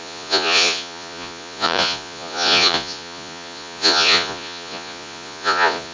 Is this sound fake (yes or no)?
yes